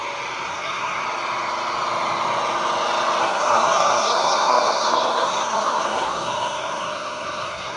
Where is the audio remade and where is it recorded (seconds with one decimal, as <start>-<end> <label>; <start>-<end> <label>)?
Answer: 0.0-0.5 recorded; 0.5-1.0 remade; 1.0-3.2 recorded; 3.2-7.8 remade